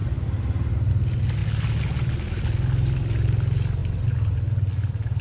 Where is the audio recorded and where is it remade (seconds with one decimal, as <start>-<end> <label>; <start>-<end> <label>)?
0.0-5.2 recorded